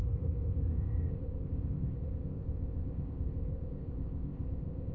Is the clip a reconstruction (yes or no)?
yes